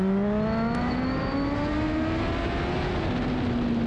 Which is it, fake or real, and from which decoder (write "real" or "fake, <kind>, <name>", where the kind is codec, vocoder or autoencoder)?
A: real